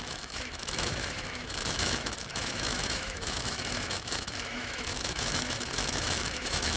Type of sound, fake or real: fake